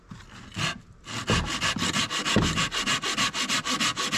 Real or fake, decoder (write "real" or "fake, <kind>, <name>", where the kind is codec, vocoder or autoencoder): real